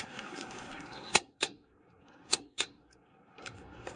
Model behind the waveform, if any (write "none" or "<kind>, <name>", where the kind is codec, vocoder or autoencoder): codec, SNAC